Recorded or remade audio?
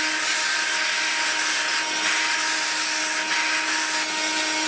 recorded